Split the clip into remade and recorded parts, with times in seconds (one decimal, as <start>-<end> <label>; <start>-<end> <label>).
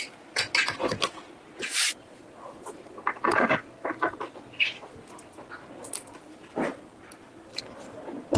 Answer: 0.0-4.3 recorded; 4.3-4.9 remade; 4.9-8.4 recorded